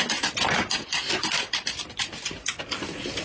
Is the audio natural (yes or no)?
yes